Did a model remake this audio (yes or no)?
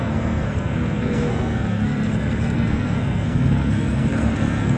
yes